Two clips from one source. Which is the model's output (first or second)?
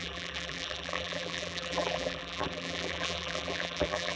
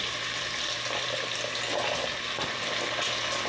first